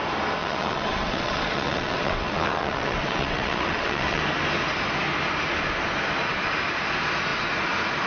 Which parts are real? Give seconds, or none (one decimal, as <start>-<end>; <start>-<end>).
0.0-0.4; 4.2-8.1